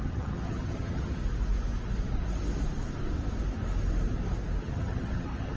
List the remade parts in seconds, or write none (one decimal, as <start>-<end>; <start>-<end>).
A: 0.0-1.2; 4.6-5.6